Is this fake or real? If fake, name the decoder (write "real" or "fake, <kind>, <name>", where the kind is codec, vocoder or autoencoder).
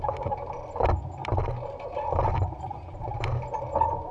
real